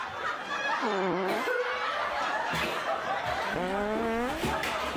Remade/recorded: recorded